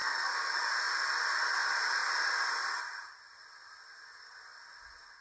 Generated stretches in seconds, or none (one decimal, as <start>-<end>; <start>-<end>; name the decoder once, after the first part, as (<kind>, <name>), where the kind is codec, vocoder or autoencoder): 0.0-0.5 (codec, SNAC)